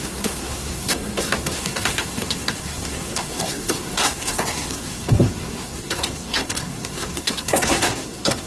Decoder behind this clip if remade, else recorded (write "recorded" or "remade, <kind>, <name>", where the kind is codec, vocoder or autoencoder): remade, codec, SNAC